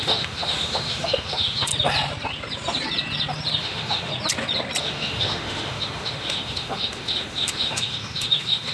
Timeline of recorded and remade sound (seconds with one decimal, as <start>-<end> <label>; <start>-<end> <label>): 0.0-1.7 remade; 1.7-3.6 recorded; 3.6-4.1 remade; 4.1-4.8 recorded; 4.8-8.7 remade